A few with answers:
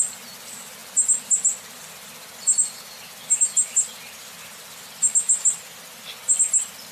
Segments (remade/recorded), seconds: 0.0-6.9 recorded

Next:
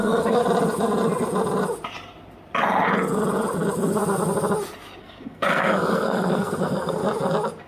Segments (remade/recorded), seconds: 0.0-0.4 remade; 0.4-5.0 recorded; 5.0-7.0 remade; 7.0-7.7 recorded